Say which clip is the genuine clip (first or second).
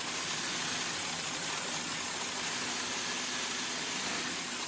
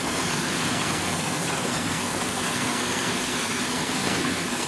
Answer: first